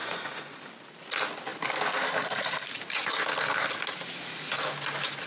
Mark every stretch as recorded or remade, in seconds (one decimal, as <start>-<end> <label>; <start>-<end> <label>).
0.0-0.6 remade; 0.6-5.3 recorded